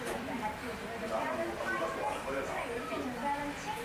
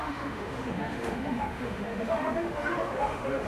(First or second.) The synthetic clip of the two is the second